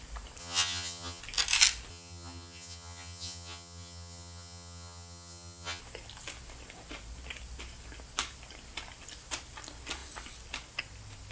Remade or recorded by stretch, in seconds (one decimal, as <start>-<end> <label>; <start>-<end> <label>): 0.0-0.4 recorded; 0.4-1.2 remade; 1.2-1.9 recorded; 1.9-5.8 remade; 5.8-11.3 recorded